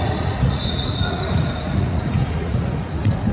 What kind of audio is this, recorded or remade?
remade